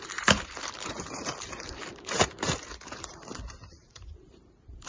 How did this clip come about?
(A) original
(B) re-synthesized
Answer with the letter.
B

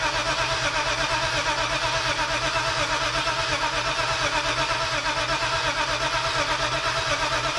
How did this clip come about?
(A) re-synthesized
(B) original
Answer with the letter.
B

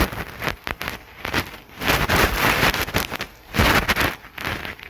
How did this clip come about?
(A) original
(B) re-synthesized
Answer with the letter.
A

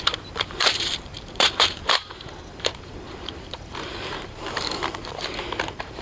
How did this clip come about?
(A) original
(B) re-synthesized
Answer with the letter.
B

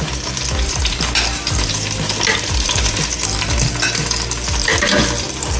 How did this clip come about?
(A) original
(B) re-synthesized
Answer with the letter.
A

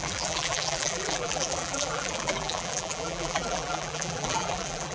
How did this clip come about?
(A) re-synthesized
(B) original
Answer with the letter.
A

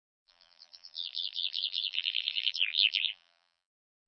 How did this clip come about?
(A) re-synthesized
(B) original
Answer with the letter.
A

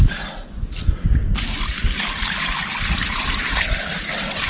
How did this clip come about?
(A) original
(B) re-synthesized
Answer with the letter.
A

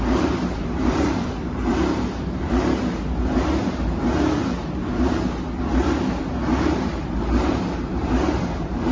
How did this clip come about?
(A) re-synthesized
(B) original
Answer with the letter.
A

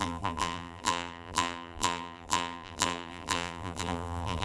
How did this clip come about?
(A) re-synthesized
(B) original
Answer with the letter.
A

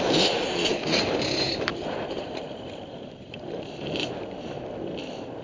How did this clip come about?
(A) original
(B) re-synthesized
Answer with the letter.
B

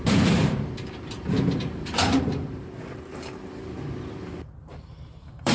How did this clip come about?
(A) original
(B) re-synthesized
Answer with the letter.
B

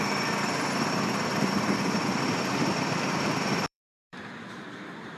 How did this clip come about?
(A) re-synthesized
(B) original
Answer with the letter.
A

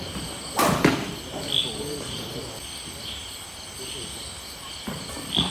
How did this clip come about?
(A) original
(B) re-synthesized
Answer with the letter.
A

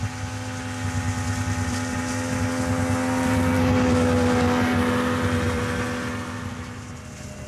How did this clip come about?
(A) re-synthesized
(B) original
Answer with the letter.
B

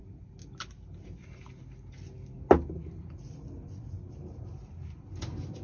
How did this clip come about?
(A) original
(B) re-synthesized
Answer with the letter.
A